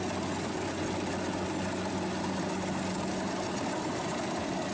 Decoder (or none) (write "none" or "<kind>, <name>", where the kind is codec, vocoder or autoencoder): none